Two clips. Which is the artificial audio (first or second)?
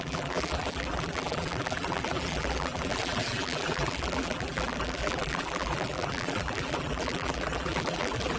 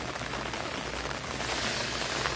first